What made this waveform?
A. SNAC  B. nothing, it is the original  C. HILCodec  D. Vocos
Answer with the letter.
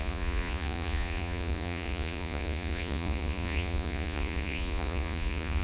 D